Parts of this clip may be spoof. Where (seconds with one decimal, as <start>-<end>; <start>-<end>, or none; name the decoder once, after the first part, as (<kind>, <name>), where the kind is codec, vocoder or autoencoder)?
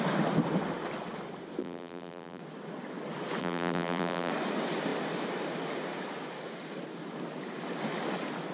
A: 1.6-2.4 (vocoder, BigVGAN v2); 3.4-4.3